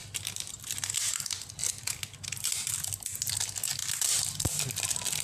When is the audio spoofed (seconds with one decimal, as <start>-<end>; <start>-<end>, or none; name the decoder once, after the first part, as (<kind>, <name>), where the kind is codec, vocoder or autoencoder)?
none